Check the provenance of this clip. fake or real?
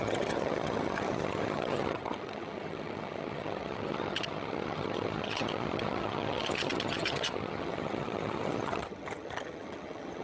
fake